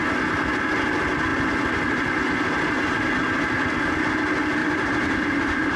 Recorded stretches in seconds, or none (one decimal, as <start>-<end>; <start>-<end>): 0.0-4.6